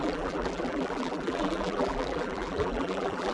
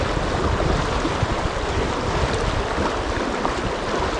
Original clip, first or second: second